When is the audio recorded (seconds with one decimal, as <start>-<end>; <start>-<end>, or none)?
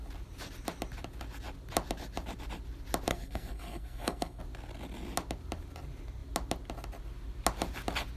0.0-3.1; 4.4-8.2